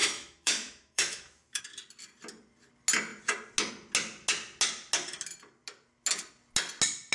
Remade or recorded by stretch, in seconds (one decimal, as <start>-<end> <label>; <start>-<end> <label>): 0.0-1.6 remade; 1.6-7.1 recorded